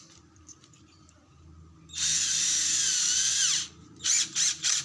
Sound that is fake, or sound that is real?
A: real